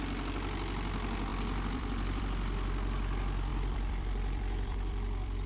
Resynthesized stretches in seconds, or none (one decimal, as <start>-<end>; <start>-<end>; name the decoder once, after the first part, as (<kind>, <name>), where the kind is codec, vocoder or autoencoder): 1.3-2.2 (vocoder, BigVGAN v2); 3.5-5.5